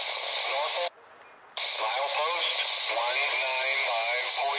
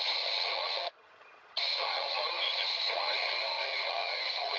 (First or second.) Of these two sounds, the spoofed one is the second